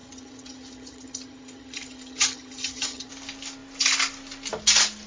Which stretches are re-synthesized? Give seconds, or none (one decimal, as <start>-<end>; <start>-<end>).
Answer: 0.0-3.1